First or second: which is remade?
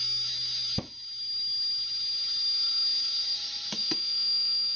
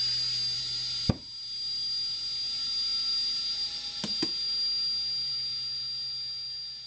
first